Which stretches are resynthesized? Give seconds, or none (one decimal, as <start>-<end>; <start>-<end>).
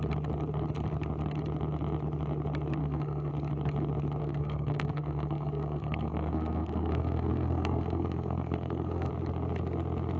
2.8-3.3; 4.2-9.1